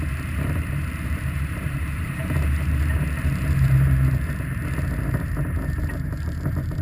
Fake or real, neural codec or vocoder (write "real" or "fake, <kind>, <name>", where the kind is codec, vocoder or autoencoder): fake, vocoder, BigVGAN v2